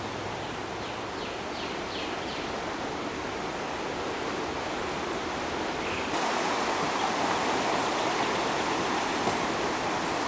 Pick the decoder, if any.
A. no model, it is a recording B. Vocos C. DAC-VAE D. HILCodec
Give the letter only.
A